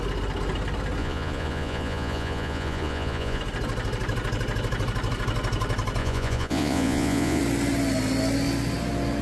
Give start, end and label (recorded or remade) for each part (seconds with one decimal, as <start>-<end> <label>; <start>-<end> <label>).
0.0-1.0 recorded; 1.0-3.4 remade; 3.4-6.0 recorded; 6.0-7.4 remade; 7.4-9.2 recorded